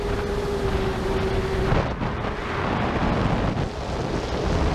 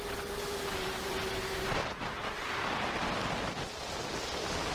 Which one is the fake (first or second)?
second